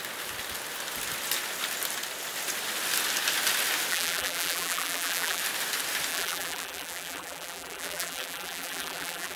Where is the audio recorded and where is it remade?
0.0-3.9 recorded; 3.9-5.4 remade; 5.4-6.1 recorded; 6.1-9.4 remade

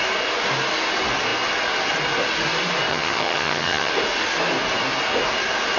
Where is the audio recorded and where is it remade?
0.0-2.9 recorded; 2.9-3.9 remade; 3.9-5.8 recorded

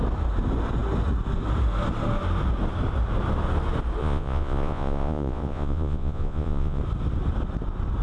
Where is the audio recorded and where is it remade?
0.0-4.0 recorded; 4.0-6.8 remade; 6.8-8.0 recorded

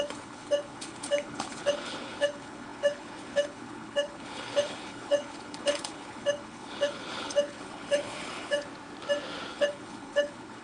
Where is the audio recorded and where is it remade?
0.0-8.7 remade; 8.7-9.5 recorded; 9.5-10.6 remade

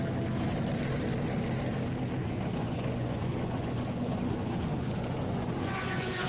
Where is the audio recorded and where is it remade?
0.0-2.2 recorded; 2.2-6.3 remade

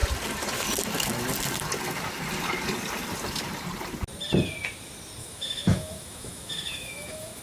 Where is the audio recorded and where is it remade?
0.0-5.2 recorded; 5.2-7.4 remade